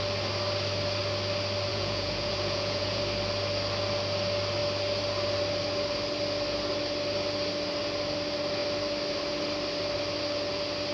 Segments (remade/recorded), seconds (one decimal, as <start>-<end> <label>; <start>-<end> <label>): 0.0-1.7 recorded; 1.7-3.0 remade; 3.0-10.9 recorded